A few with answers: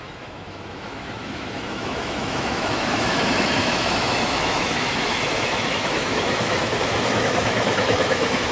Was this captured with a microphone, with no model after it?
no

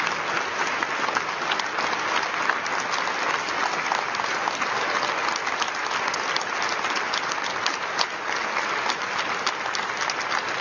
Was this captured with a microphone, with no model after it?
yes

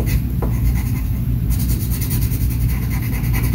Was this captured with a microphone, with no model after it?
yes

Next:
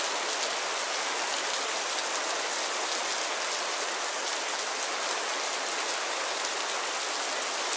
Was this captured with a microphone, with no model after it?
yes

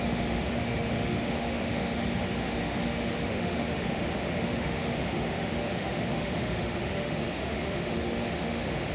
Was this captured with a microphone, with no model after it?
no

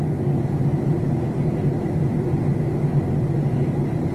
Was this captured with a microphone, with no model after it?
yes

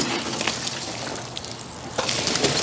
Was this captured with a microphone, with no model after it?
yes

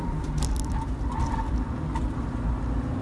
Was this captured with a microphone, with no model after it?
yes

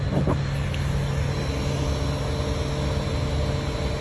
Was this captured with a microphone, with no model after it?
yes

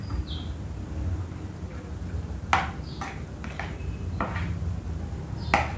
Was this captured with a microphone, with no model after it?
yes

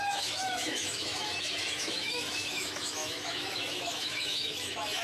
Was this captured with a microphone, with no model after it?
no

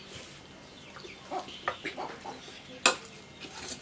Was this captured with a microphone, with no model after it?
yes